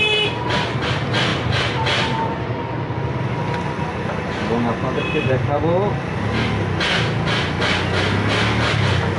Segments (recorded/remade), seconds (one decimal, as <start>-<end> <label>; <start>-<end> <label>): 0.0-9.2 recorded